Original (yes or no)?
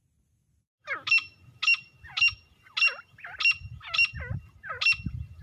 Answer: yes